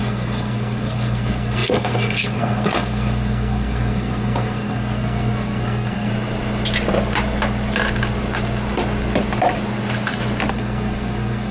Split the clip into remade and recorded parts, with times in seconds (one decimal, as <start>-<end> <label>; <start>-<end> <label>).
0.0-6.1 remade; 6.1-10.5 recorded; 10.5-11.5 remade